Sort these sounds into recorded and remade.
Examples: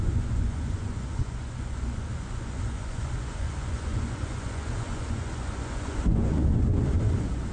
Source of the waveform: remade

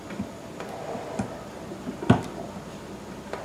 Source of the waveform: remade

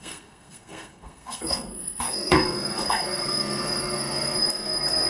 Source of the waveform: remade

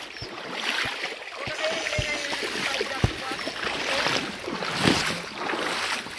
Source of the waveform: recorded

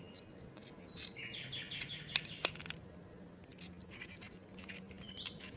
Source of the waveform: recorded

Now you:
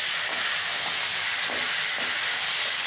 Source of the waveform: recorded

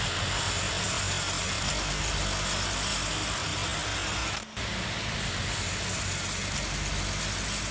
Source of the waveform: recorded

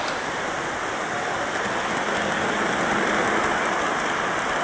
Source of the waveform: recorded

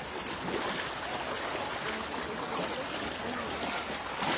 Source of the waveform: recorded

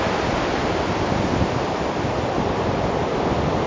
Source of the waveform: recorded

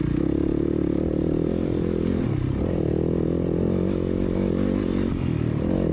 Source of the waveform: recorded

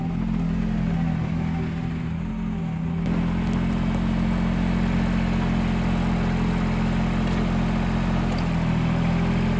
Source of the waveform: recorded